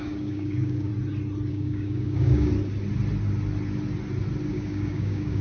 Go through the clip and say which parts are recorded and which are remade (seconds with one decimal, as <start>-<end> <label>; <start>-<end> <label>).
0.0-0.9 remade; 0.9-1.5 recorded; 1.5-2.5 remade; 2.5-4.5 recorded; 4.5-5.4 remade